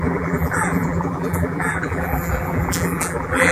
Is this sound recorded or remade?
remade